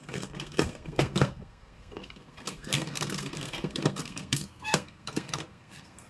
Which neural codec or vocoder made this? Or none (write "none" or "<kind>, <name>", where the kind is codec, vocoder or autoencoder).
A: codec, SNAC